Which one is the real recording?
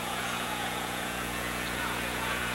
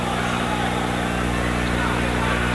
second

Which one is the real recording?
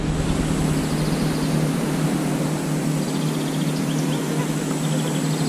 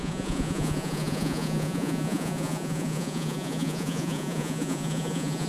first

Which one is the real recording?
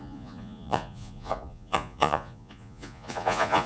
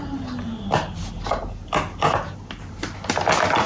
second